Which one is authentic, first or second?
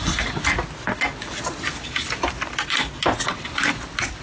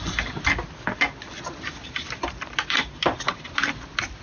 first